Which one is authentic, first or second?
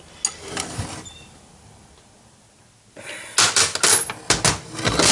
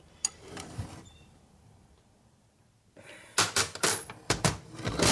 first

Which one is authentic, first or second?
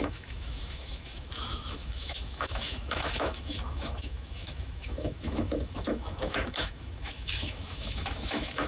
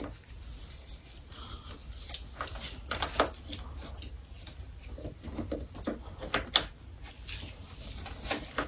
second